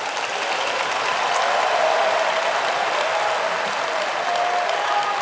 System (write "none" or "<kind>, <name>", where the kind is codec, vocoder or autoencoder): none